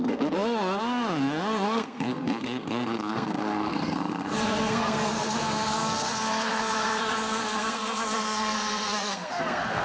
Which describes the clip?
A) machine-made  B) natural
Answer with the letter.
A